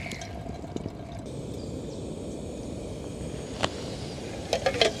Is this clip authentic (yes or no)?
yes